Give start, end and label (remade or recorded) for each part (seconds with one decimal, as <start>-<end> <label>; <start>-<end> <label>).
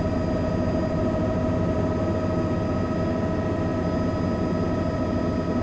0.0-5.6 recorded